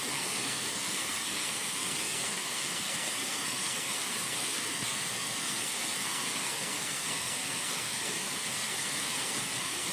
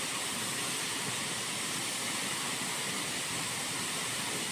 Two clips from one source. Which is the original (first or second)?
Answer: second